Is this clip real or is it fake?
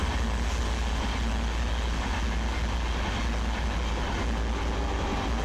real